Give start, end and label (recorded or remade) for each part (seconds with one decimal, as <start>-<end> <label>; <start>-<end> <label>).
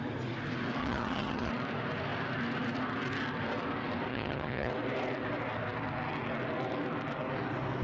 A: 0.0-0.8 recorded; 0.8-1.5 remade; 1.5-4.1 recorded; 4.1-4.7 remade; 4.7-7.8 recorded